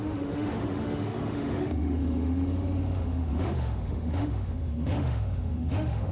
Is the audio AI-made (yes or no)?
yes